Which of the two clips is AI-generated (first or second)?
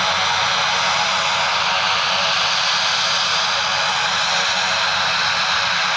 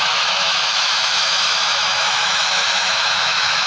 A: second